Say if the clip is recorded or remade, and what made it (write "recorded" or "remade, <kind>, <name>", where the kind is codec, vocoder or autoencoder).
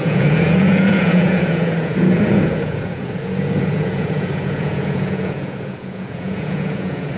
remade, vocoder, Vocos